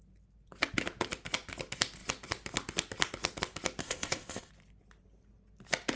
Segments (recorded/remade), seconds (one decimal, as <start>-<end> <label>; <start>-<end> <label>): 0.0-3.8 recorded; 3.8-4.5 remade; 4.5-6.0 recorded